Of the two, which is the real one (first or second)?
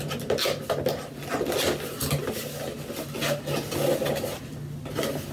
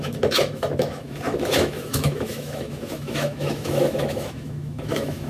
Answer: first